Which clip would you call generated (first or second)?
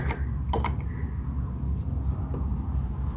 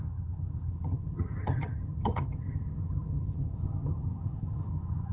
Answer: second